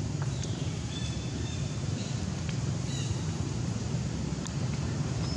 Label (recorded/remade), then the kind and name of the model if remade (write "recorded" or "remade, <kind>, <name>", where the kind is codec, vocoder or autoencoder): remade, vocoder, BigVGAN v2